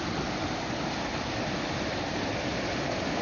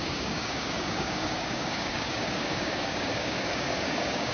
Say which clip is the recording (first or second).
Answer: first